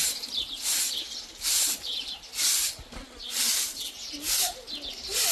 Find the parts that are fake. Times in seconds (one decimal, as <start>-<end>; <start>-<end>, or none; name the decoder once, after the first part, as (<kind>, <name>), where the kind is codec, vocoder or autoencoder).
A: 1.2-2.3 (vocoder, BigVGAN v2); 3.7-5.3